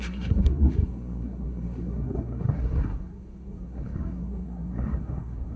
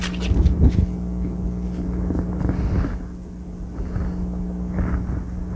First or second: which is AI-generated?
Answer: first